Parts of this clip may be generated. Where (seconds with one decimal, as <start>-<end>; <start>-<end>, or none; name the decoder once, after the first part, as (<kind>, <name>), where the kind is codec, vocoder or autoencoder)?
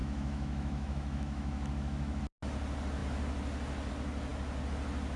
0.0-2.2 (autoencoder, DAC-VAE)